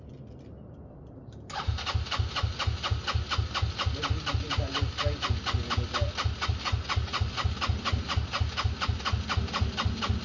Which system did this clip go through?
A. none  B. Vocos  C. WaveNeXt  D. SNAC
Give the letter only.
A